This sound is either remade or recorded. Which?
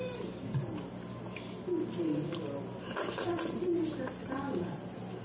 recorded